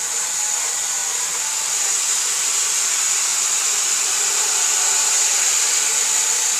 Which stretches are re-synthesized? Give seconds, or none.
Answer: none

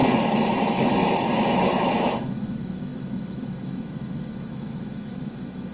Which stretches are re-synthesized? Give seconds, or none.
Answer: 0.6-1.0 (autoencoder, DAC-VAE); 1.5-5.7

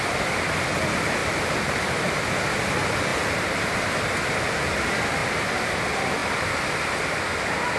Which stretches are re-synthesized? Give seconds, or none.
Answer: none

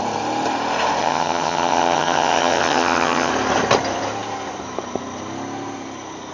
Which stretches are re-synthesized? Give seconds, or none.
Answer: 1.0-3.3 (vocoder, HiFi-GAN)

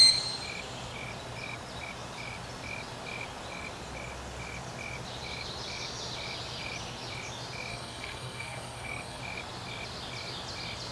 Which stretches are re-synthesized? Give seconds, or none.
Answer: 7.7-9.2 (codec, SNAC)